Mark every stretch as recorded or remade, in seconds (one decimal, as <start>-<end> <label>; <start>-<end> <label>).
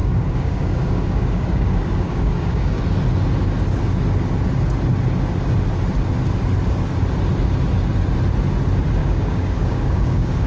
0.0-2.8 remade; 2.8-9.0 recorded; 9.0-10.5 remade